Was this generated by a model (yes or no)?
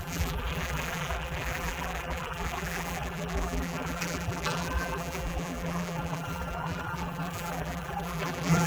yes